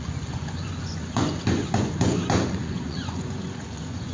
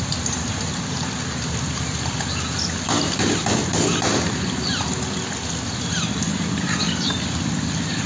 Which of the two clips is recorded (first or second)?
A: second